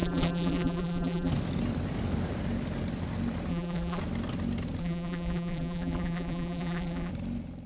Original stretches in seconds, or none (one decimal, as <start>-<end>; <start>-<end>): 1.3-3.5; 4.0-4.8; 7.1-7.7